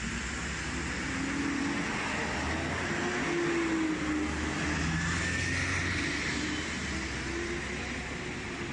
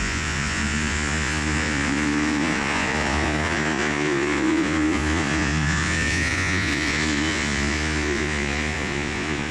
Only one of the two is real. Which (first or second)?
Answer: first